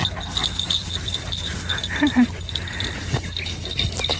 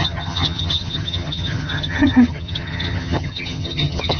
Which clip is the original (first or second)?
first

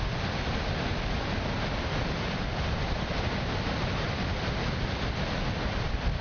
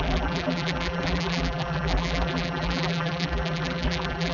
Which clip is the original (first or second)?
first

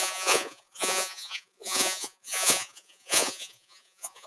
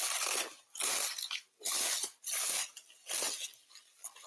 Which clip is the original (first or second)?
second